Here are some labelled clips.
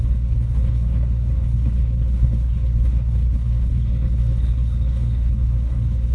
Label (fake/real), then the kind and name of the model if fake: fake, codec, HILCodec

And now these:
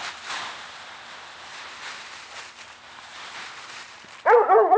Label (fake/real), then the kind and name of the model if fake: real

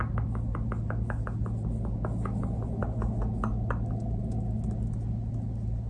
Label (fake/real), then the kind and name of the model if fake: real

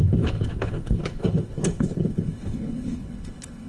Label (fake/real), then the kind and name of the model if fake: fake, codec, HILCodec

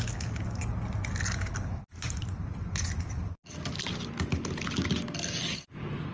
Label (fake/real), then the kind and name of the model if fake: real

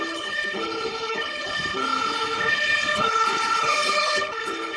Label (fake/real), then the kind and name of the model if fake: fake, codec, HILCodec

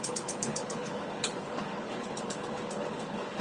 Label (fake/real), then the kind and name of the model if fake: fake, codec, HILCodec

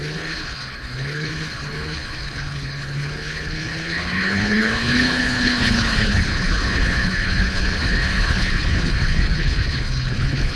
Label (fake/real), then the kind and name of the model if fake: fake, codec, HILCodec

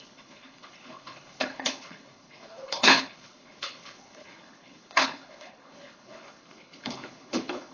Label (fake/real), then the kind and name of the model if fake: fake, codec, HILCodec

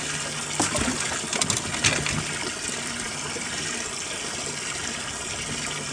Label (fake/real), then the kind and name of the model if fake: real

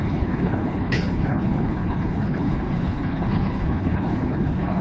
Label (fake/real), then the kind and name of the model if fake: fake, codec, HILCodec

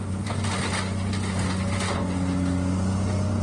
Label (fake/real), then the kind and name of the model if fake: real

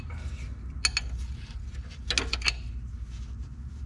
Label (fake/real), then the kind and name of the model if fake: real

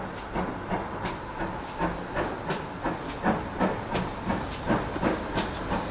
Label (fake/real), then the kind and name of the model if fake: real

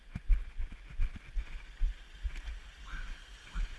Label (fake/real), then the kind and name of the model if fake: real